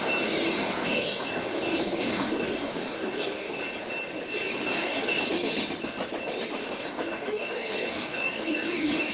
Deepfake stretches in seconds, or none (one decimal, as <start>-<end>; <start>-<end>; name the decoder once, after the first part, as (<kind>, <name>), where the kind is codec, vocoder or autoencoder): 0.6-3.6 (codec, DAC); 4.7-5.2; 6.6-9.1